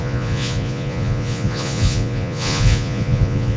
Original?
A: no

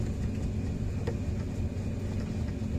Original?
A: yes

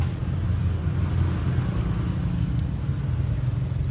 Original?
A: yes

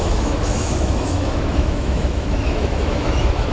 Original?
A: no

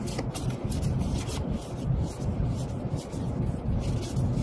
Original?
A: yes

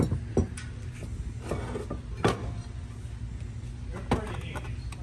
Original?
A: yes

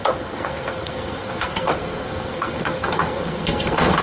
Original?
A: no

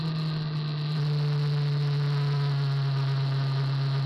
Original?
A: yes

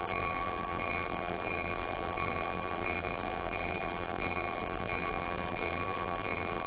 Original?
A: no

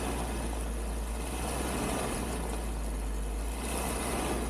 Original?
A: yes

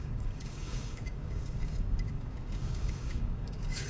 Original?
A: no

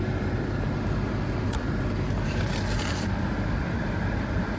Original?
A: yes